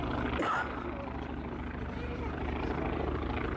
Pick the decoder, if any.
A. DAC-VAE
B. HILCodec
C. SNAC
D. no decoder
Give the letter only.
D